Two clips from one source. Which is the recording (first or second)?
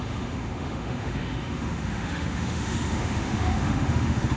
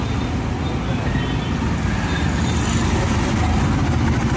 second